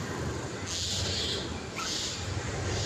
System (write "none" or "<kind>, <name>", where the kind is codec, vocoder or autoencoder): none